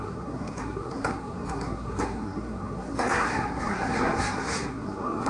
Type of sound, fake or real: fake